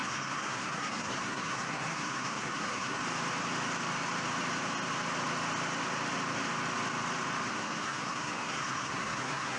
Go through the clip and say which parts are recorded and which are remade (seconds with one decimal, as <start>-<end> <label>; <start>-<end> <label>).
0.0-3.0 remade; 3.0-7.5 recorded; 7.5-9.6 remade